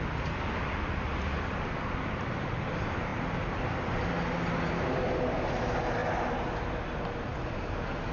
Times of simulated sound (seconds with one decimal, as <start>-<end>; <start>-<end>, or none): none